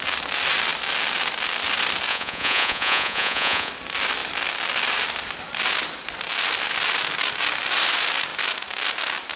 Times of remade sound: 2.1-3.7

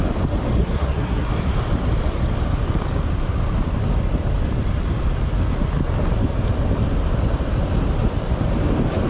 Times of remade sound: 0.6-1.3

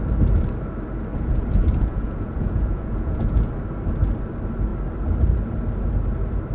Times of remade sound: 1.1-3.5

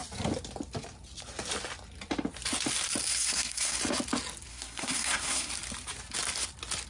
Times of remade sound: 3.1-3.8; 4.5-5.5

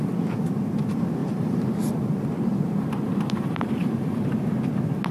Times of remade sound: 1.2-4.3